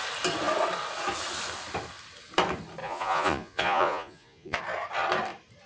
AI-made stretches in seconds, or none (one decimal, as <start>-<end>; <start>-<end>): 2.8-4.6